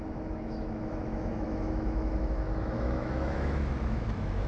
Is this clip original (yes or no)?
no